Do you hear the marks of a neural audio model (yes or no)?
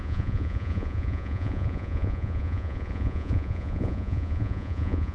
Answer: yes